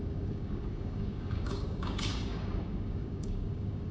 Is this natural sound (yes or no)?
no